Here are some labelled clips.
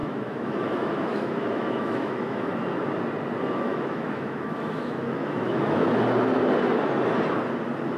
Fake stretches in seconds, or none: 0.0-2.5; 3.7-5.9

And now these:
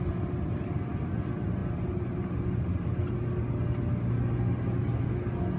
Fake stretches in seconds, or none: none

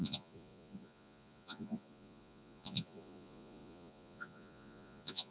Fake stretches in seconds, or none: 0.0-5.3

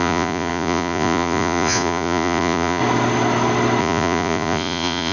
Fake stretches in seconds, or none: 0.0-2.8; 3.8-5.1